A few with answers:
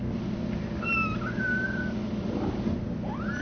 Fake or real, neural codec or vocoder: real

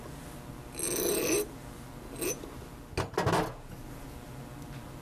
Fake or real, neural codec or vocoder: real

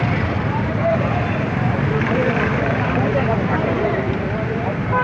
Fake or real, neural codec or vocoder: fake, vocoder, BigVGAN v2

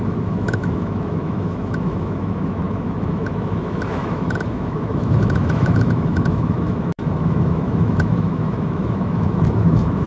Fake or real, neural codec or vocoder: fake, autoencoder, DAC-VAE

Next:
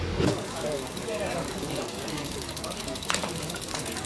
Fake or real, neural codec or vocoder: fake, codec, DAC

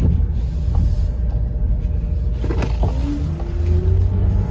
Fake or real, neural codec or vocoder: real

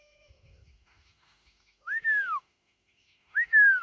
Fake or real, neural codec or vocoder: fake, autoencoder, DAC-VAE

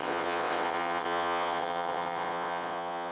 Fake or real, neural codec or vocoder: fake, vocoder, WaveNeXt